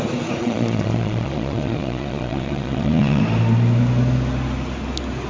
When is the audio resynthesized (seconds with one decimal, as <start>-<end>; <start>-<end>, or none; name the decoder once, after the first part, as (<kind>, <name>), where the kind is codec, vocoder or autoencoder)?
0.4-3.2 (vocoder, Vocos)